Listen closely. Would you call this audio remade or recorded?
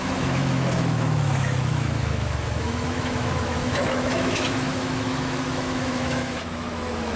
remade